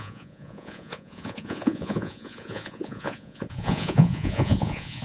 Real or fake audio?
fake